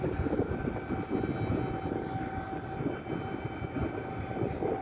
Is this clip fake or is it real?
real